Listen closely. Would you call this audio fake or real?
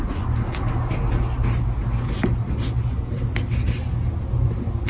real